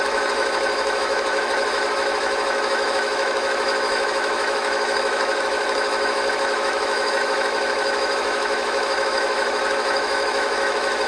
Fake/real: fake